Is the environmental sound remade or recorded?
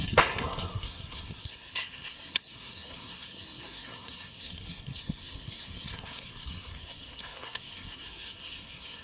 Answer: remade